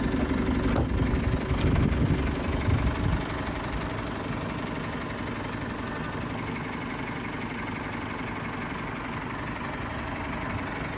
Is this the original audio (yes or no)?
yes